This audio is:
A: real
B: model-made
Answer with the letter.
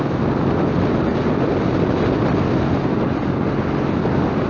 A